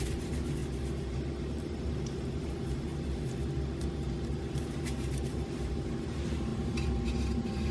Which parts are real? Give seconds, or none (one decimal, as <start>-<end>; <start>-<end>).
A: 0.6-1.3; 2.9-4.4

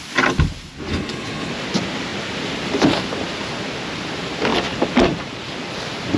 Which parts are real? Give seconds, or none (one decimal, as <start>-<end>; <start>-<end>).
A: 0.0-0.9; 1.5-6.2

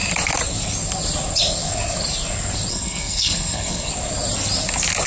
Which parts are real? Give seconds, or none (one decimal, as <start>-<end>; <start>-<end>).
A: 0.0-2.7; 3.9-5.1

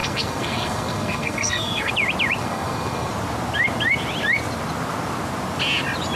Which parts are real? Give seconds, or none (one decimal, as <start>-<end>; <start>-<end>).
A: 1.9-2.4; 3.1-6.2

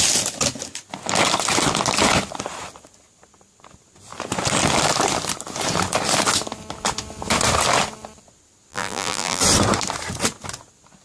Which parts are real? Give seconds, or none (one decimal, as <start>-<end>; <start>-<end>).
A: 0.0-8.7; 9.4-11.0

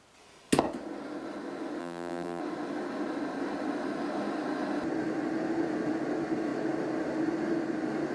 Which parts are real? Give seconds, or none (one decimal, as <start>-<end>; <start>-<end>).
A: 0.0-1.8; 2.4-8.1